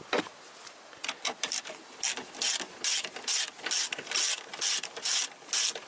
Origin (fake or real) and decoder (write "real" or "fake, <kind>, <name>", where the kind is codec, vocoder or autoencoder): real